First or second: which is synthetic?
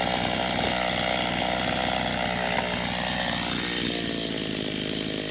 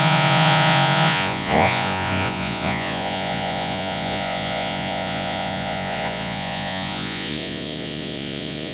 second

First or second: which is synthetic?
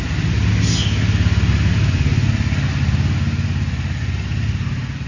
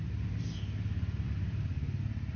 second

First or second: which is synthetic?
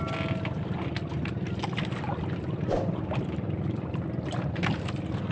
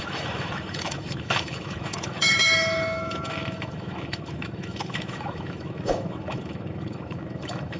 second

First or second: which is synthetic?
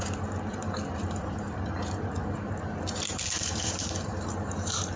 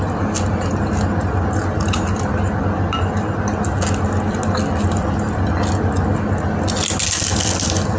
first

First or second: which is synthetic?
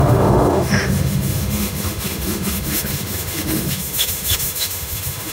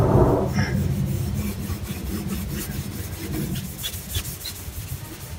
first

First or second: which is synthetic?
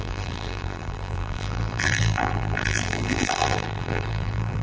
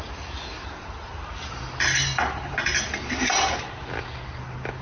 first